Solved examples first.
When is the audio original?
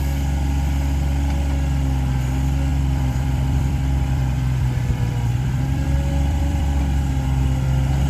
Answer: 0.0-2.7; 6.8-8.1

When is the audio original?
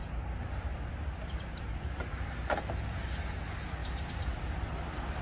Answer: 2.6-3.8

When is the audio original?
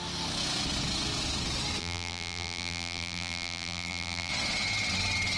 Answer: 0.0-1.8; 4.3-5.4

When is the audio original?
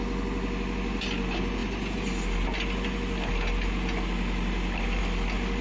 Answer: 0.0-5.6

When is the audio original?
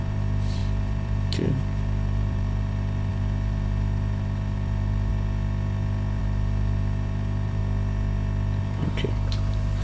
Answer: 5.1-6.2; 7.6-8.6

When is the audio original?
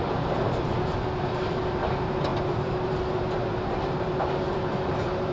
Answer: none